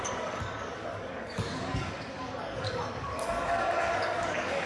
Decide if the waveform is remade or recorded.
remade